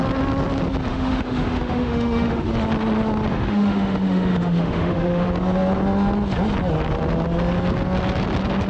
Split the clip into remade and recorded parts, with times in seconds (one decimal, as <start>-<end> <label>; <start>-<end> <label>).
0.0-0.9 recorded; 0.9-2.5 remade; 2.5-3.3 recorded; 3.3-5.3 remade; 5.3-8.7 recorded